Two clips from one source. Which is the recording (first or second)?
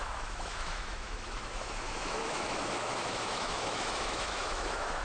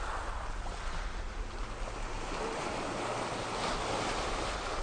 second